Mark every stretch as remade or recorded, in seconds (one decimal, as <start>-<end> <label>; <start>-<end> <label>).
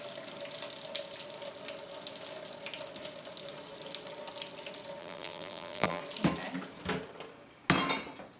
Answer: 0.0-5.0 recorded; 5.0-6.0 remade; 6.0-8.4 recorded